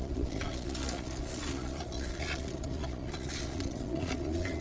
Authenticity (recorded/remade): remade